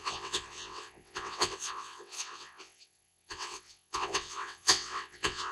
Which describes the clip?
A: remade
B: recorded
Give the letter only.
A